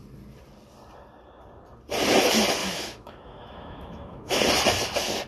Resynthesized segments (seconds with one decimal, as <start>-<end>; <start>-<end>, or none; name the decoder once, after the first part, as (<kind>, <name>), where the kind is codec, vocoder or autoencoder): 2.6-4.4 (autoencoder, DAC-VAE)